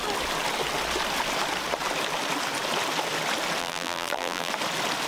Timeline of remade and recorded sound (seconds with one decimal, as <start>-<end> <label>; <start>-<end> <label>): 0.0-3.6 recorded; 3.6-4.5 remade; 4.5-5.1 recorded